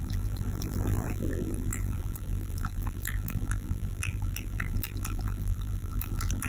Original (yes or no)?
no